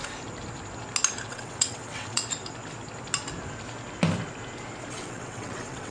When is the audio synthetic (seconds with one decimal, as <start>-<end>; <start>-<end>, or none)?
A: 1.3-2.2; 4.9-5.9